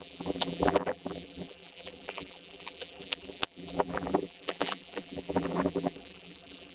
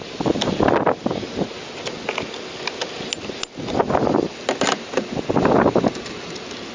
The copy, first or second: first